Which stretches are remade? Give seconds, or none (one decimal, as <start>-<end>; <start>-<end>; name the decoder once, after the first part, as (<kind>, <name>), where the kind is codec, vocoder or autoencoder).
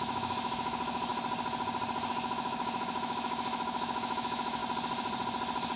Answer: 0.0-1.1 (autoencoder, DAC-VAE); 2.1-4.6